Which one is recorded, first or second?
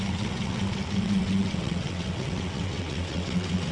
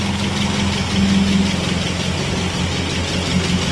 second